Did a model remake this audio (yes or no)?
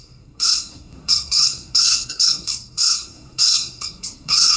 yes